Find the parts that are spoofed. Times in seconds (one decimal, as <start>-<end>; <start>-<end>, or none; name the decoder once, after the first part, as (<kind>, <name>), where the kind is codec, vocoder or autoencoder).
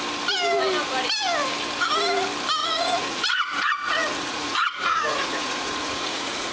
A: 2.6-6.5 (vocoder, Vocos)